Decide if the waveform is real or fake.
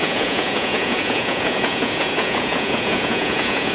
fake